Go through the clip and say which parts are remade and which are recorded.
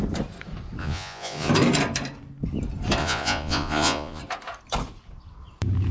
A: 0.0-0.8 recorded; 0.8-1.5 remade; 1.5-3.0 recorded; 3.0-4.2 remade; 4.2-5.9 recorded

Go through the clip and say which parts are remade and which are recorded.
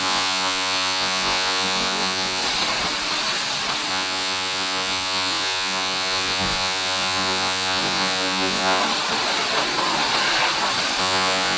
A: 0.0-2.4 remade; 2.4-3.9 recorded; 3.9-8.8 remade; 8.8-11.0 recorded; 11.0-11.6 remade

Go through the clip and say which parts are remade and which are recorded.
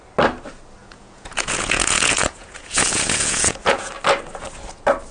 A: 0.0-0.8 recorded; 0.8-3.9 remade; 3.9-5.1 recorded